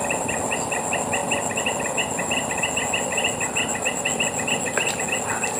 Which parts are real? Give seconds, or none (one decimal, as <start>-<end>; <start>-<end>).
0.0-5.6